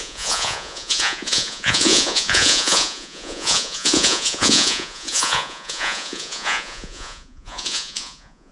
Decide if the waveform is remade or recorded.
remade